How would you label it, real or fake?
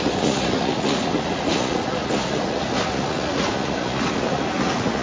fake